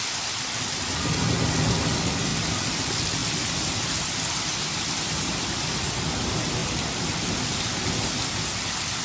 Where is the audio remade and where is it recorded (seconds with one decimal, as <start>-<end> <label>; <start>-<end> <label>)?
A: 0.0-9.0 recorded